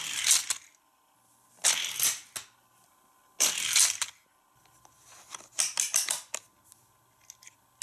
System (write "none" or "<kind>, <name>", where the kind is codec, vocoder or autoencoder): none